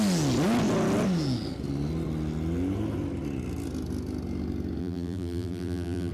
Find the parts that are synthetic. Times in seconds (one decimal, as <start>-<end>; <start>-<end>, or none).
4.8-6.1